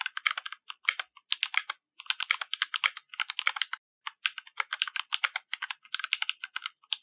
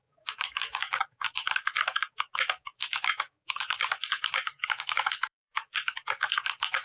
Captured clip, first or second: first